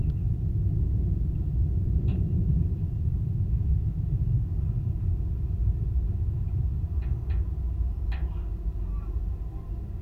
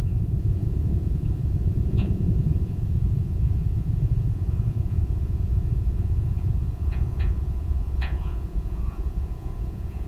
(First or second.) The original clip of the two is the first